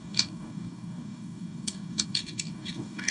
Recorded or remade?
remade